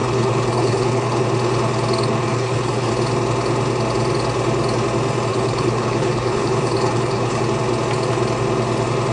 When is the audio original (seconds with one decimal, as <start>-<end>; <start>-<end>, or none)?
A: 1.2-2.3; 2.9-5.3; 7.4-9.1